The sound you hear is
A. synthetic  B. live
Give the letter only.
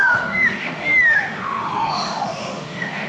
A